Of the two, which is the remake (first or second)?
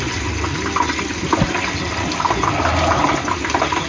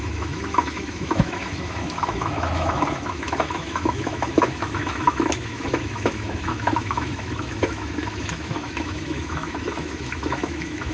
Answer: second